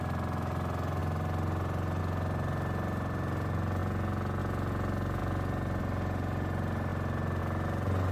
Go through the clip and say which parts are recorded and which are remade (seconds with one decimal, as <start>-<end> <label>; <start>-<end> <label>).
0.0-8.1 recorded